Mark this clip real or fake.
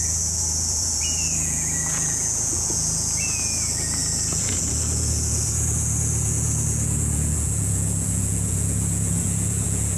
fake